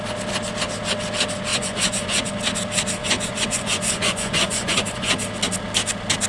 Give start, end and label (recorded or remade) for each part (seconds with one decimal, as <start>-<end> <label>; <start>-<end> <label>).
0.0-1.5 recorded; 1.5-2.3 remade; 2.3-3.0 recorded; 3.0-5.1 remade; 5.1-6.3 recorded